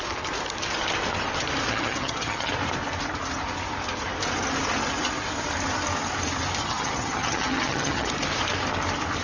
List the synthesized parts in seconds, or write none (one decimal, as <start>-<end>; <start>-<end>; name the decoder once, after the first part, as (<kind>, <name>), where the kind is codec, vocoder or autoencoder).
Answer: 1.7-2.5 (vocoder, HiFi-GAN); 6.6-8.1